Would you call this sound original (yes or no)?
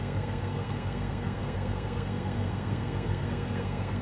no